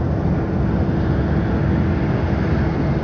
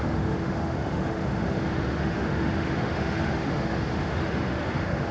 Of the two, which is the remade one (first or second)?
second